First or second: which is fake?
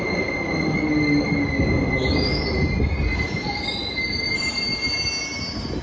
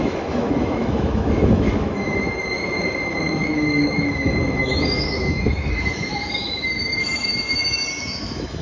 second